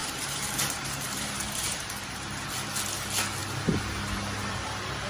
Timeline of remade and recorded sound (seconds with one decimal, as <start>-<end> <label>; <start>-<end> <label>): 0.0-2.7 remade; 2.7-3.4 recorded; 3.4-5.1 remade